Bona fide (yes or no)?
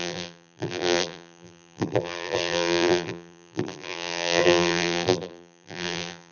no